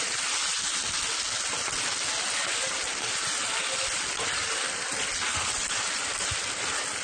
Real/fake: real